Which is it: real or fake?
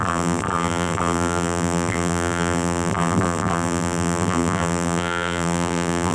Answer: fake